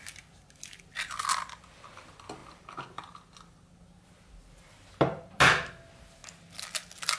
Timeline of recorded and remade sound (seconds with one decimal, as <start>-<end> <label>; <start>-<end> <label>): 0.0-7.2 recorded

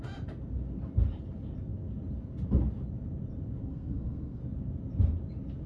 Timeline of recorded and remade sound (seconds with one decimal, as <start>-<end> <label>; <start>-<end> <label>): 0.0-3.7 recorded; 3.7-4.4 remade; 4.4-5.7 recorded

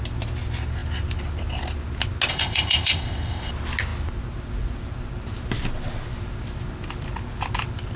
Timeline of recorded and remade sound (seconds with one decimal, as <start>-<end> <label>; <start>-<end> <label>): 0.0-2.3 recorded; 2.3-3.5 remade; 3.5-8.0 recorded

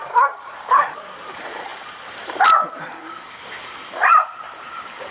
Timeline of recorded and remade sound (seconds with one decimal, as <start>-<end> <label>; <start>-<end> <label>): 0.0-5.1 remade